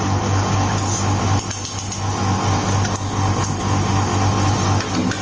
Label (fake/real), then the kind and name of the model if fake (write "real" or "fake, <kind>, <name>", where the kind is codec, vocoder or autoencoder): real